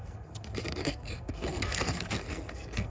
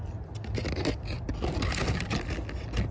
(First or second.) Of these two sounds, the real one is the second